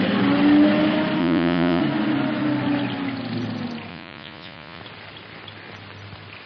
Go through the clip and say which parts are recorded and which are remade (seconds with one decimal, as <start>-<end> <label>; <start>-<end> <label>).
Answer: 0.0-1.2 recorded; 1.2-1.8 remade; 1.8-3.9 recorded; 3.9-4.8 remade; 4.8-6.5 recorded